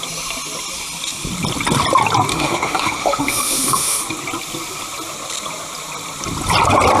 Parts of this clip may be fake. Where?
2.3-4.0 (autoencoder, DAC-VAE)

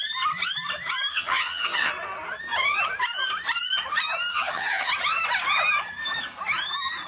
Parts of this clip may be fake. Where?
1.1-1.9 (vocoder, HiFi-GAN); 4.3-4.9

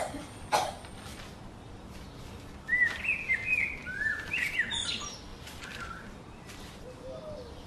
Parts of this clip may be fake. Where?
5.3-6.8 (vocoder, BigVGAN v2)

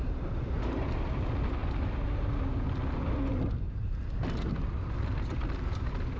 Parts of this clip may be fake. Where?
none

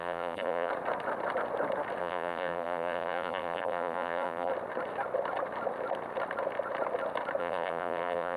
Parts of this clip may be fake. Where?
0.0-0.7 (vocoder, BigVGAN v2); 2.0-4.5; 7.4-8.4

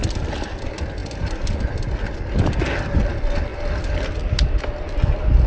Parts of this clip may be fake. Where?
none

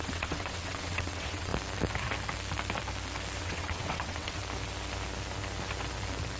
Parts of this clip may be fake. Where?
0.0-1.5 (vocoder, WaveNeXt); 3.4-4.4

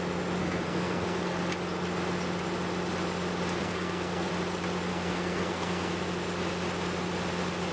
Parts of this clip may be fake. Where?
0.4-1.4 (codec, SNAC); 3.6-4.3; 4.9-5.9